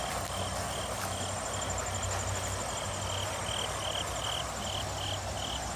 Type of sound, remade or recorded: recorded